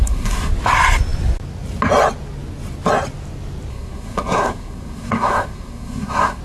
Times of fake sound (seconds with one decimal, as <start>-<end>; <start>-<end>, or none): 0.0-0.5; 3.7-6.4